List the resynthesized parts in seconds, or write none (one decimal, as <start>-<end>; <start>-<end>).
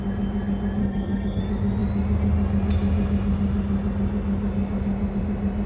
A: 0.8-1.4